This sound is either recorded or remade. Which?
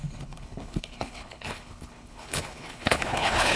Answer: remade